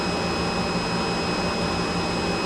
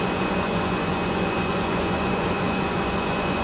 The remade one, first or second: second